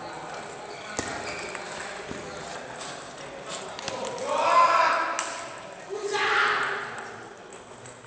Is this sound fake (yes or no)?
no